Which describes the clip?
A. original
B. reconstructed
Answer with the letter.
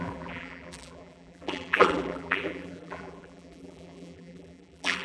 B